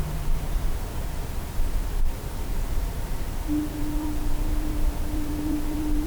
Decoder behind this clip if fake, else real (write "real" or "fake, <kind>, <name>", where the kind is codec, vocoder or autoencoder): fake, vocoder, BigVGAN v2